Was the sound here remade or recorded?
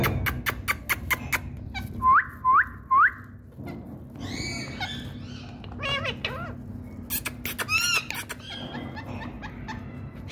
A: recorded